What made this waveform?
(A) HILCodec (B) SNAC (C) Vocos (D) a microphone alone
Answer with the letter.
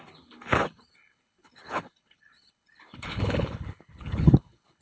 A